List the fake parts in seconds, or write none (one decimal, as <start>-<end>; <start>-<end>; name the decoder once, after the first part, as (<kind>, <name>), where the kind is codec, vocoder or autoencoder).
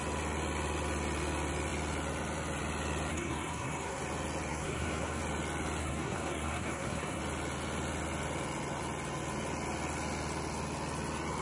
3.1-4.0 (codec, SNAC); 4.5-5.2; 5.8-7.2